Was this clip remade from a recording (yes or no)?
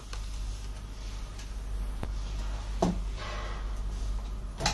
no